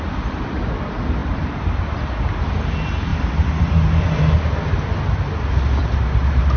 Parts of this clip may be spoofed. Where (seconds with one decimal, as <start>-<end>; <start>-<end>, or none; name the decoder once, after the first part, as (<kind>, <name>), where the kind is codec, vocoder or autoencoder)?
1.2-1.8 (vocoder, BigVGAN v2); 3.1-4.2; 5.8-6.6